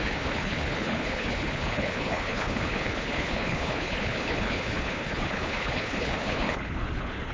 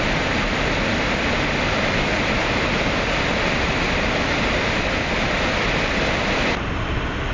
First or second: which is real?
second